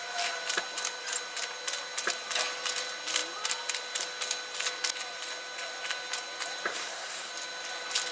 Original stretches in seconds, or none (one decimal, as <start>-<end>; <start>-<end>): 0.0-6.7; 7.3-8.1